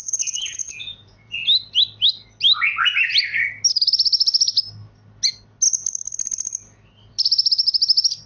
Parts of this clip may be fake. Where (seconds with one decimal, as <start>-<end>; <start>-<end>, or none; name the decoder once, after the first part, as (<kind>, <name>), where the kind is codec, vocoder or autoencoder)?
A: 0.0-1.3 (vocoder, Vocos)